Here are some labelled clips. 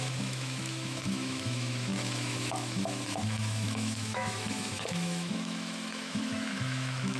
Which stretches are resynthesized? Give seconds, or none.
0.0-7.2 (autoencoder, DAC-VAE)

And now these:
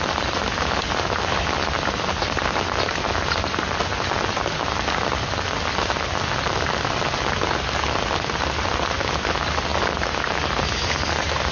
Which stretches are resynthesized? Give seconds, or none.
none

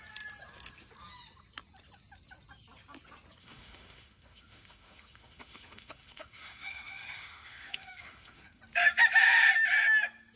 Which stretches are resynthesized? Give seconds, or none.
3.4-8.6 (autoencoder, DAC-VAE)

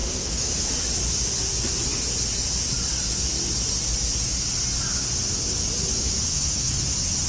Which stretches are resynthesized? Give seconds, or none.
0.0-0.7 (autoencoder, DAC-VAE); 6.1-6.8